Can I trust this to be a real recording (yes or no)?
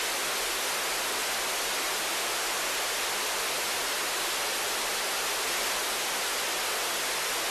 yes